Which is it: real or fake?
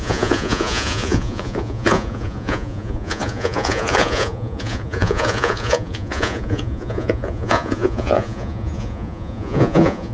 fake